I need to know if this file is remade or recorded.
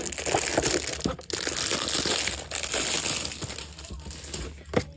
recorded